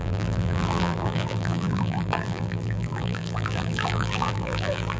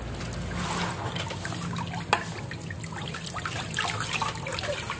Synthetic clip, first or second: first